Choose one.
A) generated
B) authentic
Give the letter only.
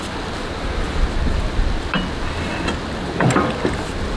B